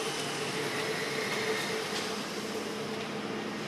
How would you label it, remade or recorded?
recorded